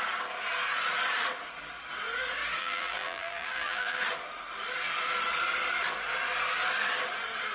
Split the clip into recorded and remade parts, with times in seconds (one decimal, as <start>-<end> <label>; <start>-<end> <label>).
0.0-2.6 recorded; 2.6-4.0 remade; 4.0-7.5 recorded